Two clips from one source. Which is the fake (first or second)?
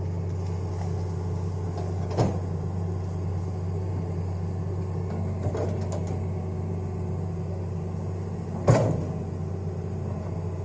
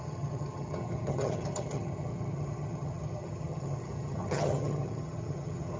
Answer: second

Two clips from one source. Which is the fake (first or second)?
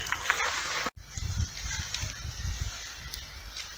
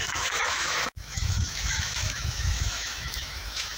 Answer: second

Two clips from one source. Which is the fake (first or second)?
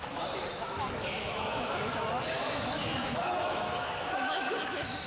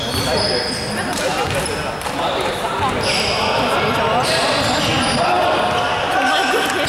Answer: first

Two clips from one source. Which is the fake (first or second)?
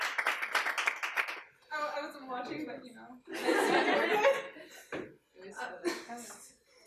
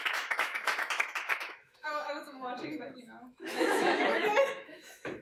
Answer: second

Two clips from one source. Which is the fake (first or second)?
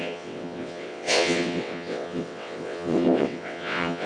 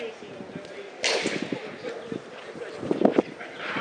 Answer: first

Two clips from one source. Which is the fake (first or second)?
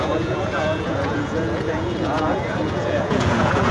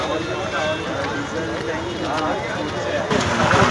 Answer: first